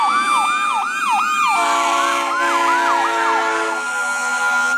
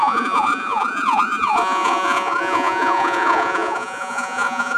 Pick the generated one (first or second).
second